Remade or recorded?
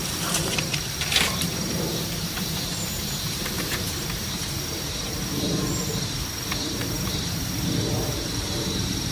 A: remade